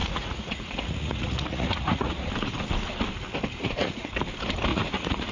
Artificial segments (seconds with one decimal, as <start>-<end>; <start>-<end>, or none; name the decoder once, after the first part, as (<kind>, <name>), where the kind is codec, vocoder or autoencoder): 0.0-2.3 (vocoder, Vocos); 3.5-4.1; 4.7-5.3